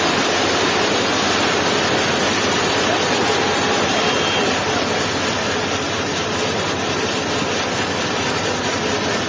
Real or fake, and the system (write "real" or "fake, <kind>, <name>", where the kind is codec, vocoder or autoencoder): real